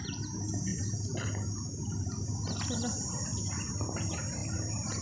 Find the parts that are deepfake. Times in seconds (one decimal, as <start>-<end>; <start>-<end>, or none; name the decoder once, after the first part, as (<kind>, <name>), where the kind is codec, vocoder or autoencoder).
none